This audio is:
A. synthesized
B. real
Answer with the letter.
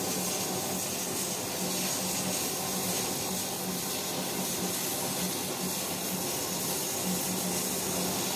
B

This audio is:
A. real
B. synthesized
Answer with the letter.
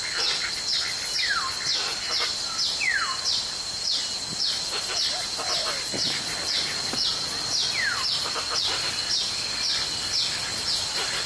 A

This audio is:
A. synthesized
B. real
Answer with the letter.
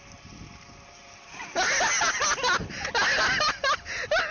B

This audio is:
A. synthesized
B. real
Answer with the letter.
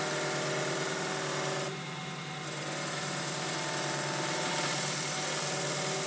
B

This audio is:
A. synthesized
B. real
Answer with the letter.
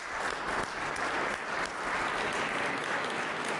B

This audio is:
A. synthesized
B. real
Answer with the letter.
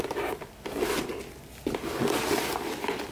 B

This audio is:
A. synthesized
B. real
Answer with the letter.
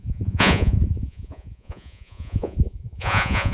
A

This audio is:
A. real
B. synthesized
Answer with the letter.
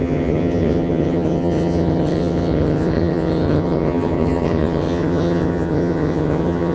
B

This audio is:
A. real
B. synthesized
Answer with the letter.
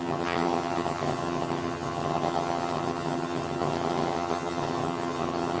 B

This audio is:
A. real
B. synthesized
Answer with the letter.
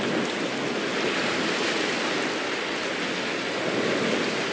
A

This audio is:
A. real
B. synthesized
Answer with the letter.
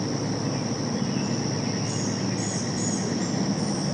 A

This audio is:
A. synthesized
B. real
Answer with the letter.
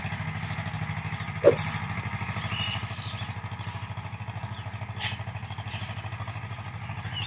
B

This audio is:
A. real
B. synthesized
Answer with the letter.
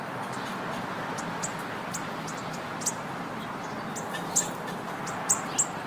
A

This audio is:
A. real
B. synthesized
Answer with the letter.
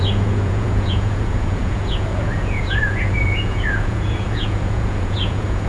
B